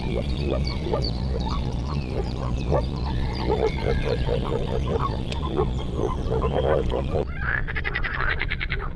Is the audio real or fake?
fake